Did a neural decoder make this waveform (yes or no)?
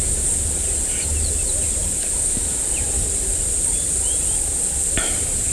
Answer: yes